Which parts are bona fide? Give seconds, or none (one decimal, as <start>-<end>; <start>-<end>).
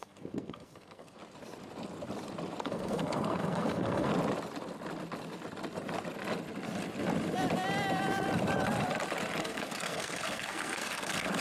1.2-2.6; 4.1-9.4